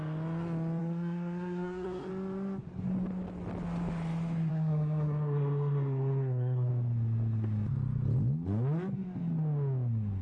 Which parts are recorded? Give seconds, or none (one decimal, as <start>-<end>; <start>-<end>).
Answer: 0.0-0.8; 2.1-4.5; 6.7-10.2